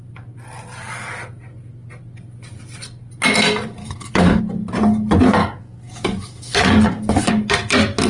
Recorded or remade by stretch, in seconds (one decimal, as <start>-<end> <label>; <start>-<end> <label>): 0.0-3.8 recorded; 3.8-4.4 remade; 4.4-5.4 recorded; 5.4-7.3 remade; 7.3-8.1 recorded